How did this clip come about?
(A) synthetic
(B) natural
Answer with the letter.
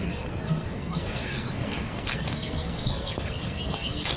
A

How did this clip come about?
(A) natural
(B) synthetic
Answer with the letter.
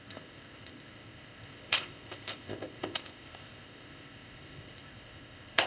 B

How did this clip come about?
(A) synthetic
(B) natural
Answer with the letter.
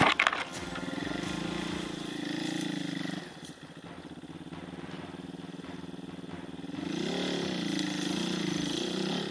B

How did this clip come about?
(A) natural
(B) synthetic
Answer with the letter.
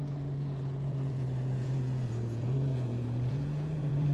B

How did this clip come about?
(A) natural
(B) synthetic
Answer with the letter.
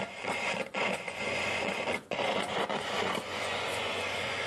B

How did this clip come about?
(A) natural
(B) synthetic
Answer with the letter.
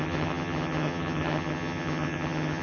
B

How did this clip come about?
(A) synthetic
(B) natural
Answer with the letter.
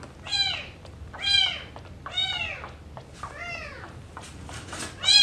B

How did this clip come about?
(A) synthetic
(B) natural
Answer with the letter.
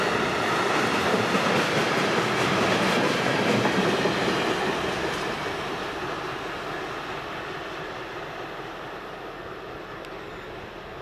B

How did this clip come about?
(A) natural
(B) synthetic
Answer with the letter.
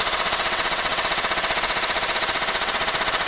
B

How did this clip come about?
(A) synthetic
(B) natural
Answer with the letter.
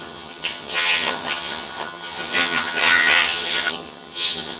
A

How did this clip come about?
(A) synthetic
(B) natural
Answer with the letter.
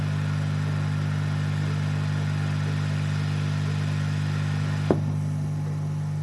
B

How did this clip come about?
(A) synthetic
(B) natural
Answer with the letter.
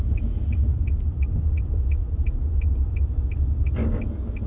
B